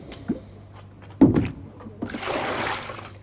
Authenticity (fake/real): real